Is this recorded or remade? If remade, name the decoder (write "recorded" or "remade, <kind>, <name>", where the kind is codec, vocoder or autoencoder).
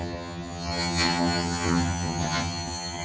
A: remade, vocoder, HiFi-GAN